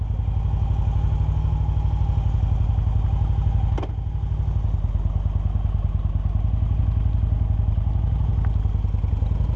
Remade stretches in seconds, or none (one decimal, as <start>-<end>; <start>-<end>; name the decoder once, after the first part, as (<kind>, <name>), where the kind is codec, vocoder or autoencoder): 8.3-9.1 (vocoder, BigVGAN v2)